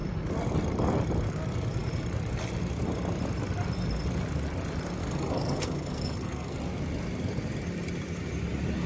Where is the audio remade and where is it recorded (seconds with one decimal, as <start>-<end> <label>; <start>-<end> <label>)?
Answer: 0.0-5.0 recorded; 5.0-6.6 remade; 6.6-8.9 recorded